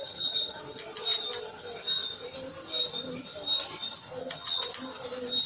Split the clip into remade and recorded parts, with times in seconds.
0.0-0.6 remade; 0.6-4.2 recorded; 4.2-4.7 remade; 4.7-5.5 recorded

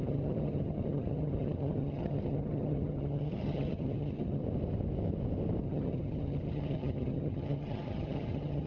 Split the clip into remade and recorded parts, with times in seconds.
0.0-4.4 remade; 4.4-5.6 recorded; 5.6-8.7 remade